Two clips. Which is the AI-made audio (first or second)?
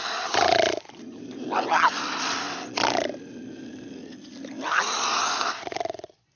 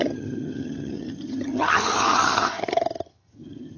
second